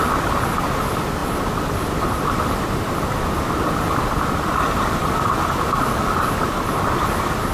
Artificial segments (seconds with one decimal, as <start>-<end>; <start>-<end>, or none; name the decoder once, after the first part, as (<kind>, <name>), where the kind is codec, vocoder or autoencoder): 0.0-1.2 (vocoder, BigVGAN v2); 3.5-7.5